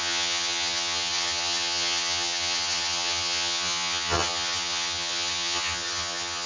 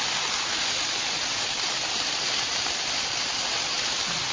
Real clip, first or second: second